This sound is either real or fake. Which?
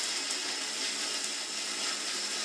real